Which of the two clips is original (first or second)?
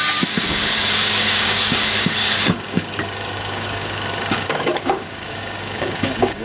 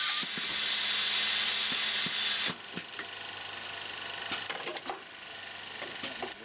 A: second